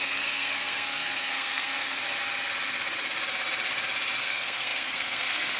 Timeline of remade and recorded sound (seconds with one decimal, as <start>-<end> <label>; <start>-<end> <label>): 0.0-2.0 remade; 2.0-4.2 recorded; 4.2-5.6 remade